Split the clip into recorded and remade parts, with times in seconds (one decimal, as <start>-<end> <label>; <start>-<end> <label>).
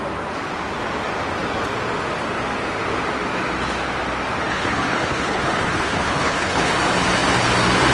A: 0.0-4.5 recorded; 4.5-6.7 remade; 6.7-7.9 recorded